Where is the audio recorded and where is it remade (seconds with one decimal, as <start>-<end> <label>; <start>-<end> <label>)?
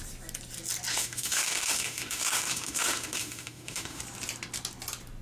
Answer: 0.0-0.9 recorded; 0.9-4.0 remade; 4.0-5.2 recorded